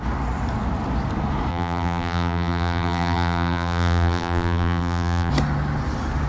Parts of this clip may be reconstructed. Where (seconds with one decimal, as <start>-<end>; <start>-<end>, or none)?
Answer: 1.5-5.3